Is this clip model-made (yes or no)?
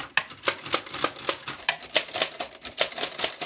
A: no